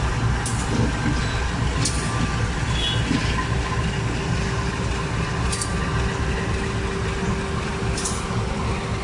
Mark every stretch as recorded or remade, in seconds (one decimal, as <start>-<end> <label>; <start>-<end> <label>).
0.0-9.0 recorded